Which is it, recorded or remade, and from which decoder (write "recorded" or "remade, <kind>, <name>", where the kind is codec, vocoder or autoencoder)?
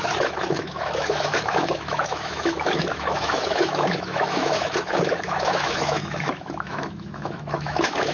remade, autoencoder, DAC-VAE